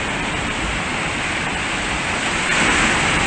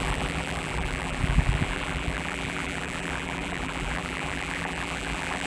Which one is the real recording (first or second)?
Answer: first